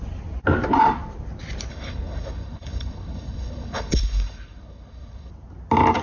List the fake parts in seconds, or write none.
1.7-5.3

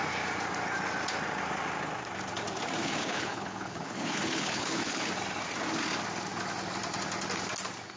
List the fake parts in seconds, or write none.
2.8-5.1

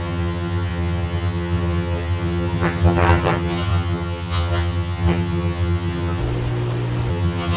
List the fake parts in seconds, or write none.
0.0-6.2; 7.1-7.6